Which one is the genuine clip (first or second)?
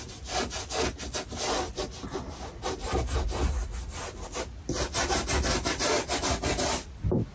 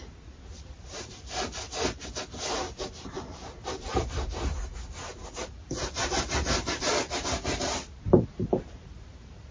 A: first